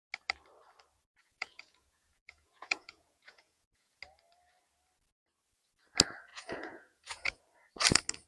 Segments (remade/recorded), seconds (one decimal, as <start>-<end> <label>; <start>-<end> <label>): 0.0-1.2 recorded; 1.2-4.0 remade; 4.0-6.3 recorded; 6.3-7.4 remade; 7.4-8.3 recorded